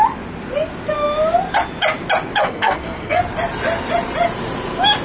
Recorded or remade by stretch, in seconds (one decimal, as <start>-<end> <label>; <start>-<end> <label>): 0.0-2.4 recorded; 2.4-3.2 remade; 3.2-5.0 recorded